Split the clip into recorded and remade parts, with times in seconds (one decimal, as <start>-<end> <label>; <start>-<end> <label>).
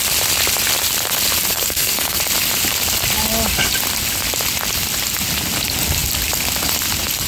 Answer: 0.0-1.5 recorded; 1.5-2.2 remade; 2.2-7.3 recorded